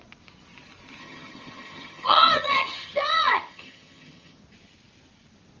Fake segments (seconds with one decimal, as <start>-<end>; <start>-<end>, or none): 1.0-4.4